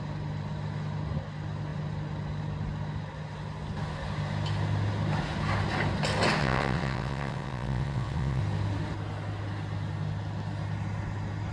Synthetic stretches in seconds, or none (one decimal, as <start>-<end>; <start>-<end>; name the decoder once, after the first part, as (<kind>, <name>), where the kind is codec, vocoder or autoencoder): 6.4-8.4 (vocoder, WaveNeXt)